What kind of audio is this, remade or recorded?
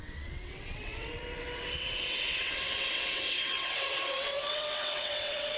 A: remade